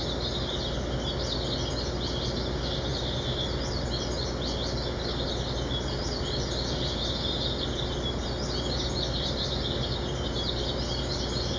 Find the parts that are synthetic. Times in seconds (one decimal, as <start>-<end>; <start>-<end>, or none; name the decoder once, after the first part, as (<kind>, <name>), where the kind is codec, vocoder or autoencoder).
none